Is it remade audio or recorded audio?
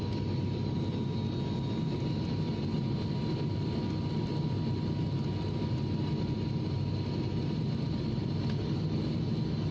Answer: recorded